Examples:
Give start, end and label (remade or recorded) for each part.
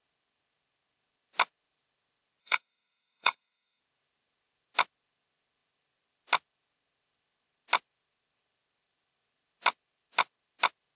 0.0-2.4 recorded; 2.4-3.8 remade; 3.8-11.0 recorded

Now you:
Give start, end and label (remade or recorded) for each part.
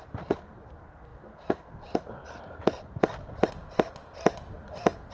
0.0-5.1 recorded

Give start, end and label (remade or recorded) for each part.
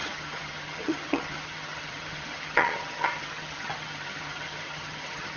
0.0-5.4 remade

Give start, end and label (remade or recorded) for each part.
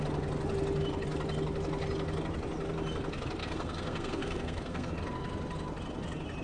0.0-3.4 recorded; 3.4-4.9 remade; 4.9-6.4 recorded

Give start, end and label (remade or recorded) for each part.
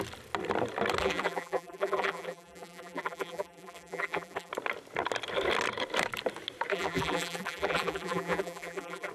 0.0-1.0 recorded; 1.0-4.5 remade; 4.5-6.7 recorded; 6.7-9.1 remade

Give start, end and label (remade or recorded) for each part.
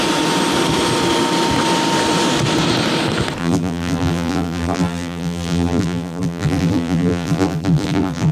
0.0-3.4 recorded; 3.4-8.3 remade